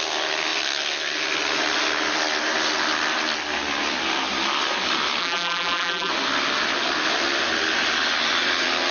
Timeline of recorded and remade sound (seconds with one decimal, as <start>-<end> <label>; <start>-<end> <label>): 0.0-5.2 recorded; 5.2-6.1 remade; 6.1-8.9 recorded